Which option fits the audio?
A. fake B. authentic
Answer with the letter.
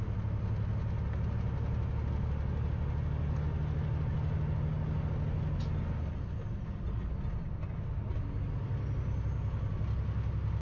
B